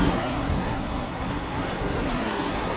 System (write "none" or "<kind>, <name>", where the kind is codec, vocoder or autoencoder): codec, SNAC